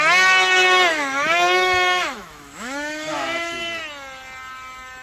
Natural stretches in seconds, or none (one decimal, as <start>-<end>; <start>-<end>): 0.0-0.9; 3.8-5.0